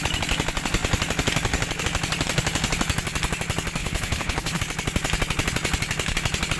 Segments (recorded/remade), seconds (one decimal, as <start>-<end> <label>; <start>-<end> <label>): 0.0-3.8 recorded; 3.8-4.6 remade; 4.6-6.6 recorded